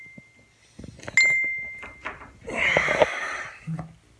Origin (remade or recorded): recorded